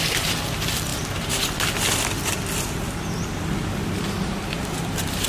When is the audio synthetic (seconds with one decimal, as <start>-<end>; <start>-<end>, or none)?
0.0-0.9; 2.6-5.3